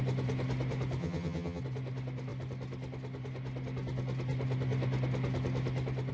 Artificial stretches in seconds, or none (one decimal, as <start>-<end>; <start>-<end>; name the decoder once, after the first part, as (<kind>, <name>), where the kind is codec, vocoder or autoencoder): 1.0-1.6 (vocoder, HiFi-GAN)